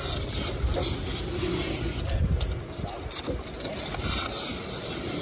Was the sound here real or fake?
real